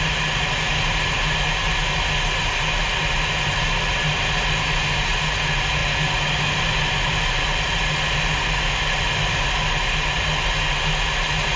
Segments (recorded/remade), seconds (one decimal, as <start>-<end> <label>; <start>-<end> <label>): 0.0-11.6 recorded